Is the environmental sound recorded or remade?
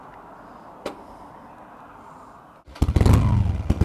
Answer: recorded